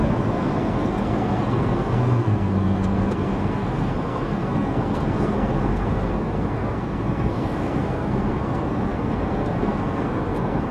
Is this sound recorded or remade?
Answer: remade